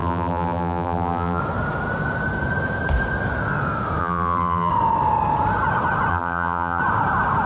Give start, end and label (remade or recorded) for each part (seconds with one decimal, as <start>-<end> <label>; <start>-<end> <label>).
0.0-1.4 remade; 1.4-4.0 recorded; 4.0-4.7 remade; 4.7-6.1 recorded; 6.1-6.8 remade; 6.8-7.5 recorded